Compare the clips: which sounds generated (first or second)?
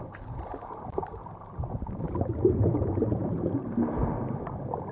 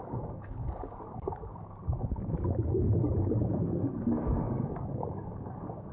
second